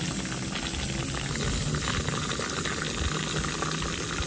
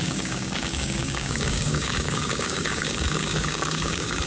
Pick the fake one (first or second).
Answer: second